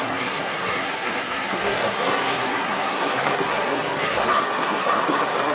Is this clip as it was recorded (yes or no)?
no